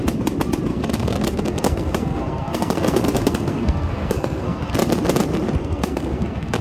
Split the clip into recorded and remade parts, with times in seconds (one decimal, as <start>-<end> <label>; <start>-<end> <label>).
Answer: 0.0-0.7 recorded; 0.7-4.7 remade; 4.7-5.6 recorded; 5.6-6.6 remade